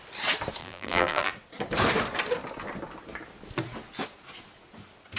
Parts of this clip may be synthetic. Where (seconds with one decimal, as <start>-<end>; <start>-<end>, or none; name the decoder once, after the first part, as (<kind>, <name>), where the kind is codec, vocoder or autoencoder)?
0.6-1.3 (vocoder, BigVGAN v2)